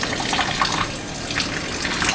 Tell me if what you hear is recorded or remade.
recorded